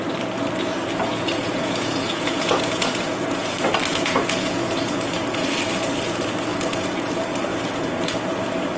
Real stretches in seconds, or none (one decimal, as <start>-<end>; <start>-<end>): 0.0-1.1; 3.5-3.9; 5.1-6.5; 7.1-7.5; 8.1-8.8